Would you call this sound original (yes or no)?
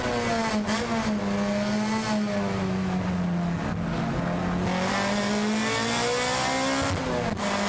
yes